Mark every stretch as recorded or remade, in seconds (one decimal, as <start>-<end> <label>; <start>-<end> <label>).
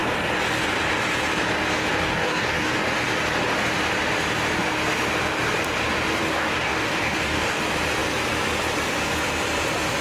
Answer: 0.0-2.0 recorded; 2.0-2.8 remade; 2.8-6.2 recorded; 6.2-7.6 remade; 7.6-10.0 recorded